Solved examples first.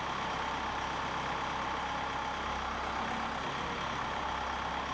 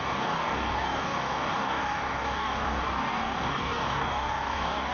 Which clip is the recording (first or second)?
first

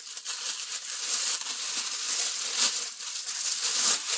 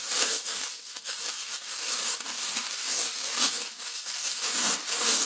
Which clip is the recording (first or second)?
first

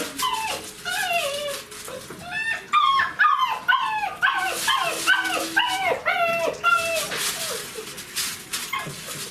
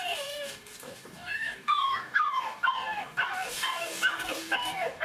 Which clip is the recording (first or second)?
first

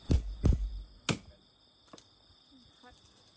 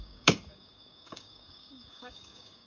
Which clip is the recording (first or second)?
first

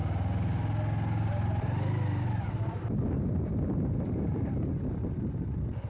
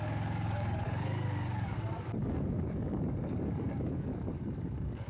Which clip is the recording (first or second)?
first